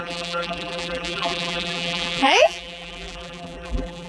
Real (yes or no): no